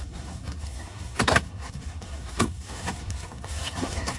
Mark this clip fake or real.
fake